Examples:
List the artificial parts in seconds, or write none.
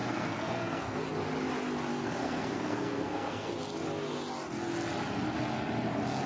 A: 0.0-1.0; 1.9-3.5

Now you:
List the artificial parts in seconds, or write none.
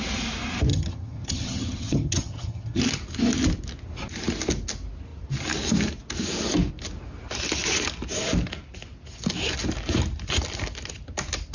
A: 0.7-2.8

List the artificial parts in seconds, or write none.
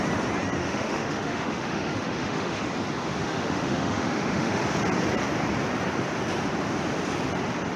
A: 0.6-2.7; 3.2-4.6